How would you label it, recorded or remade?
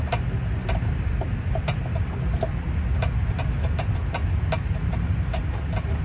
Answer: recorded